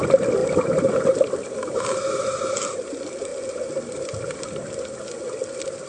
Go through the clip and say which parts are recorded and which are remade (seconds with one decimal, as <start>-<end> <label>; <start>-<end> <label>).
0.0-0.4 recorded; 0.4-1.0 remade; 1.0-1.6 recorded; 1.6-2.4 remade; 2.4-5.9 recorded